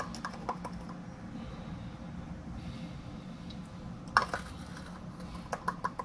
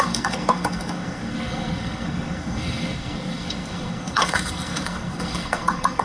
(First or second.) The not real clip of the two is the second